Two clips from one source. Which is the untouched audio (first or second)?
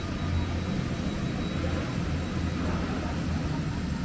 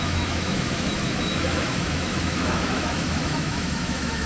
first